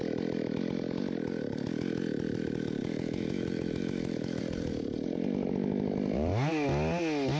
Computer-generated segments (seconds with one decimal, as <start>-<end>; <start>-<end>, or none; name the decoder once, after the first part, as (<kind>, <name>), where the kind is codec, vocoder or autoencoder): 2.8-4.4 (autoencoder, DAC-VAE)